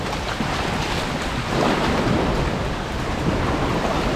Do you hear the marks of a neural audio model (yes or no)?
no